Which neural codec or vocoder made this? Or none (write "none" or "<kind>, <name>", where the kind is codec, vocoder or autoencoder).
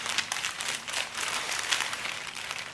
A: vocoder, BigVGAN v2